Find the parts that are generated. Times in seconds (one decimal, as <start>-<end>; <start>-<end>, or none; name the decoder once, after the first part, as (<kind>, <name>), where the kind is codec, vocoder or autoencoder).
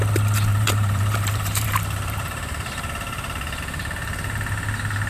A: 0.5-3.6 (vocoder, BigVGAN v2)